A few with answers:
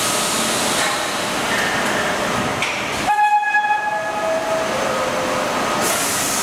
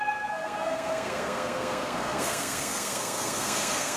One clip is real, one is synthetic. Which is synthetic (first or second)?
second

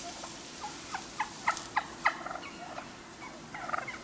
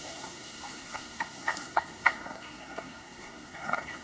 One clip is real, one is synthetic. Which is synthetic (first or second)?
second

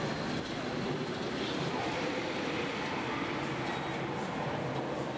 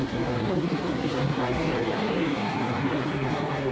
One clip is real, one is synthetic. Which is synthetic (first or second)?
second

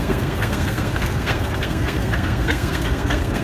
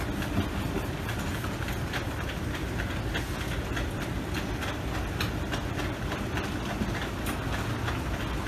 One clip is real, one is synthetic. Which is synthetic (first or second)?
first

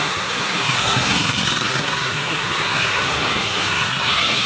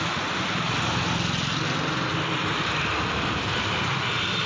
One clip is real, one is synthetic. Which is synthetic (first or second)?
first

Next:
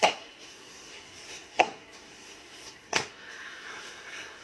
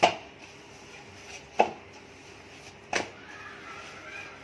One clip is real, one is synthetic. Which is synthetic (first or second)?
first